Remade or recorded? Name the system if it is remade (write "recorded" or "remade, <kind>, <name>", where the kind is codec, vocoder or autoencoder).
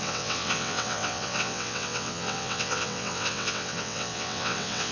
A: remade, vocoder, WaveNeXt